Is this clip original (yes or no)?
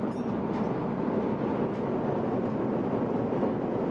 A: yes